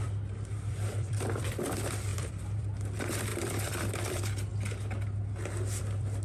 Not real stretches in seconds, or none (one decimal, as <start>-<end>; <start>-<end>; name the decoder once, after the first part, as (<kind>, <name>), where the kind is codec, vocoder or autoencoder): 0.0-4.5 (vocoder, BigVGAN v2); 5.8-6.2

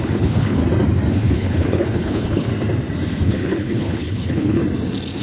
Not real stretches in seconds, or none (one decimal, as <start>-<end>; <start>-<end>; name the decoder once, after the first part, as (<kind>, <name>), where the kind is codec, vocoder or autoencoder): 0.0-0.6 (codec, HILCodec); 1.1-2.5; 3.2-4.6

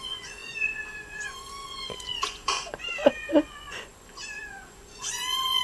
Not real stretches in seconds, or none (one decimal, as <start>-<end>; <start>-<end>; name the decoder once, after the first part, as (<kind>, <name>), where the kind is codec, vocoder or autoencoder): 0.0-5.6 (vocoder, Vocos)

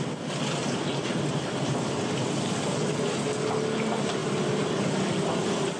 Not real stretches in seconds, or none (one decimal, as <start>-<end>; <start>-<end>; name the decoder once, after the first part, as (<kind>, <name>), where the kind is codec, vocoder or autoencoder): 0.9-1.9 (vocoder, BigVGAN v2); 4.2-5.8